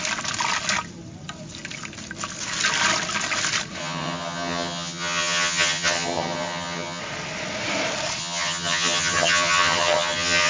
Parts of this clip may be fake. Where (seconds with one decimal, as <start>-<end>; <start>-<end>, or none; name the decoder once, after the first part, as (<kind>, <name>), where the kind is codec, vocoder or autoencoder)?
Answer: 3.8-7.0 (vocoder, HiFi-GAN); 8.2-10.5